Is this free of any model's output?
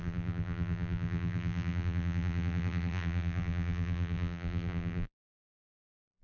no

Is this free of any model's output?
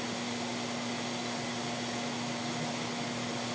yes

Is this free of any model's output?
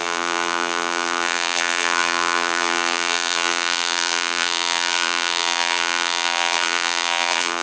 no